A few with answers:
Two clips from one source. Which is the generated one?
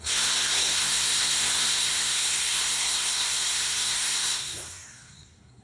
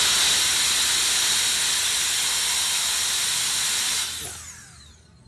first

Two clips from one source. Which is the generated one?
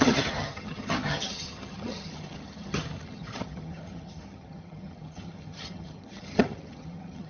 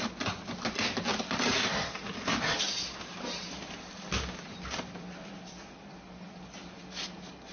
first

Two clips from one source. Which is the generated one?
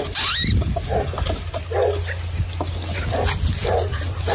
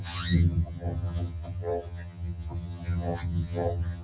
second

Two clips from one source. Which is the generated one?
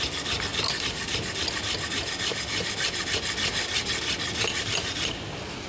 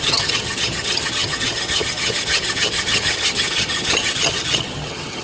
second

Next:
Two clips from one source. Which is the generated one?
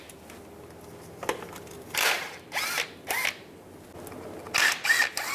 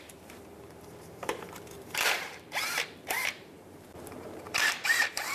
second